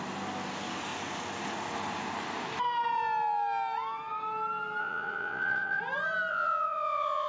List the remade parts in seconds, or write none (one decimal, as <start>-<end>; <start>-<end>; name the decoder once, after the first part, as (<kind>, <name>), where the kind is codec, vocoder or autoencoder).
4.8-5.8 (vocoder, Vocos); 6.3-7.3